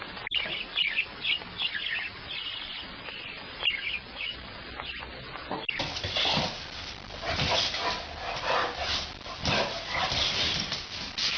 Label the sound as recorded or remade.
recorded